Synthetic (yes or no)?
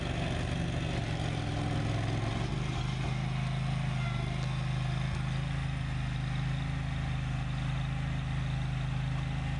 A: no